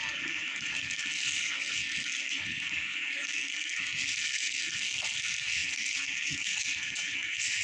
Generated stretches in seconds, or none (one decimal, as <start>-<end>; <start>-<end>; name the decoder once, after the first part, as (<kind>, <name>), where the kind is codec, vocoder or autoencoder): 0.0-7.6 (codec, SNAC)